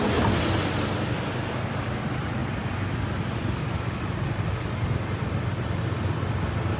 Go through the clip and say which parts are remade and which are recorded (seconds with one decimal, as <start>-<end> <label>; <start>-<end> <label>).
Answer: 0.0-6.8 recorded